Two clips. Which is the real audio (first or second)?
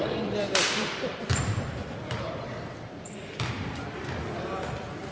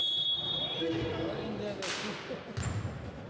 second